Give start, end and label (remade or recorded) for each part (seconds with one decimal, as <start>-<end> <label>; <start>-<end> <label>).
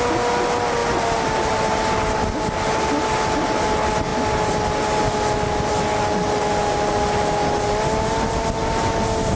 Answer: 0.0-9.4 recorded